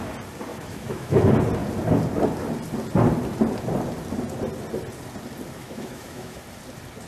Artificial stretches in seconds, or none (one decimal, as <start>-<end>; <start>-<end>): 0.5-1.2; 5.6-6.4